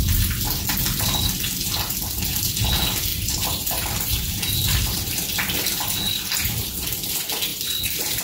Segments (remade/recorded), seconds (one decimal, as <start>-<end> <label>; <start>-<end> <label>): 0.0-3.1 recorded; 3.1-5.1 remade; 5.1-7.5 recorded; 7.5-8.2 remade